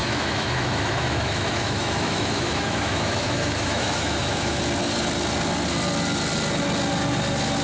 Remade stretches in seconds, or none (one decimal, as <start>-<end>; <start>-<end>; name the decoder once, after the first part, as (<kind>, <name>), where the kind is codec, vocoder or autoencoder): 0.0-4.6 (autoencoder, DAC-VAE)